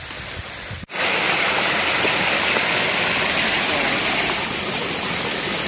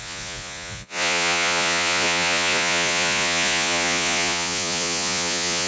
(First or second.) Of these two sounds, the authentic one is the first